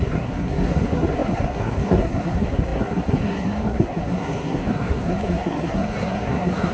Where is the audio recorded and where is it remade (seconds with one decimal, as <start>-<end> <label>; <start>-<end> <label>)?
0.0-6.7 remade